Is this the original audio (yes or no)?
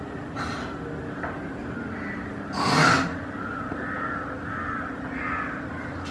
yes